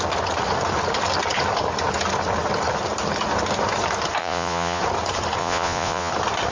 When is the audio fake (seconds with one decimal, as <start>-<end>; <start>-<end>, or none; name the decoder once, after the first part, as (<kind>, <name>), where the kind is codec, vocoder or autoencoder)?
4.2-4.8 (vocoder, Vocos); 5.4-6.1